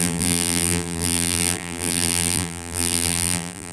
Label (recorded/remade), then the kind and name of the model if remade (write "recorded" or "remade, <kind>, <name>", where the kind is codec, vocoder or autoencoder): remade, vocoder, BigVGAN v2